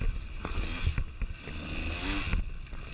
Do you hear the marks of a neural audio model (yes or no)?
no